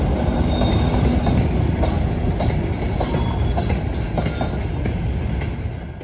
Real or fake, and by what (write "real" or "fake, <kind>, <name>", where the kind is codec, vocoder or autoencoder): real